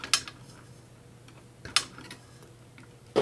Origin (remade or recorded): recorded